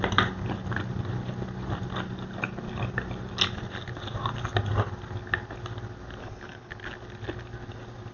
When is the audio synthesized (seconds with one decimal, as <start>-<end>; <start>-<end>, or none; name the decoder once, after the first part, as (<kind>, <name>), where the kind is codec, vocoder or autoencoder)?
6.2-6.7 (codec, HILCodec)